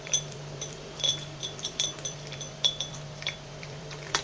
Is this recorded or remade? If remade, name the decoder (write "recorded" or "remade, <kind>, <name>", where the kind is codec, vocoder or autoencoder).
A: remade, vocoder, BigVGAN v2